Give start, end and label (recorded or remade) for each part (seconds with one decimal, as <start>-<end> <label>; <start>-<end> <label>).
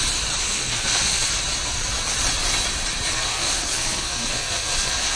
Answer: 0.0-0.4 recorded; 0.4-1.3 remade; 1.3-3.1 recorded; 3.1-5.2 remade